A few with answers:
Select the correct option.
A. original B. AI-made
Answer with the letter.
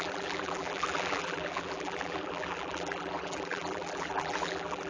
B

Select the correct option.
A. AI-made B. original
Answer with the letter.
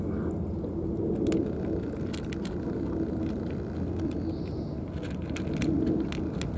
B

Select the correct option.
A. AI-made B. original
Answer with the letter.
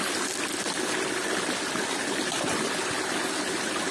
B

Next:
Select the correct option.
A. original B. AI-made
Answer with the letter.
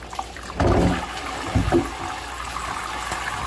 A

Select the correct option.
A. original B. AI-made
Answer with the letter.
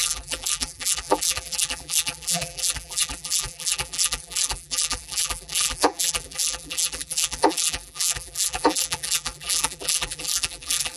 B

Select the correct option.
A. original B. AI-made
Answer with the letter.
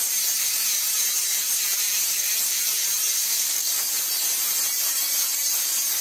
B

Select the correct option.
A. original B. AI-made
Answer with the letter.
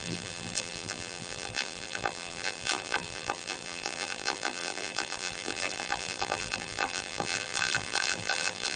B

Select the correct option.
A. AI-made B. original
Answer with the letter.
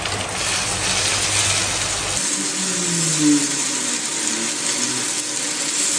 B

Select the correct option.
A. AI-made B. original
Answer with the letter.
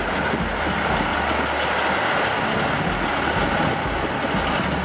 B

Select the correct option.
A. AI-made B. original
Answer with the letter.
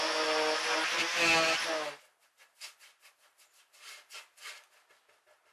B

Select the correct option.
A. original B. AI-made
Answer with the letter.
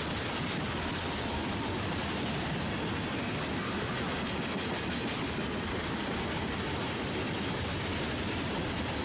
A